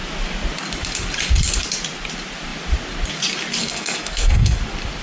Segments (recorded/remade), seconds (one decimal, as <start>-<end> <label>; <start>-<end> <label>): 0.0-3.6 recorded; 3.6-4.6 remade; 4.6-5.0 recorded